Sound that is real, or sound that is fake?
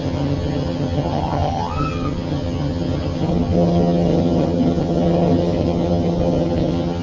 fake